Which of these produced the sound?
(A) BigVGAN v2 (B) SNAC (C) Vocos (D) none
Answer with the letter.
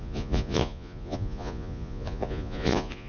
C